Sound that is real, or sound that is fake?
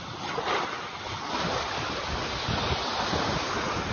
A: real